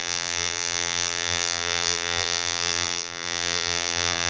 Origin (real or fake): fake